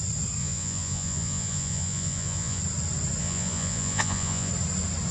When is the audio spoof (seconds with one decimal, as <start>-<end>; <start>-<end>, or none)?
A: 0.4-2.6; 3.2-4.5